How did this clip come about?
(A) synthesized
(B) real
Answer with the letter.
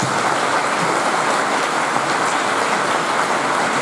B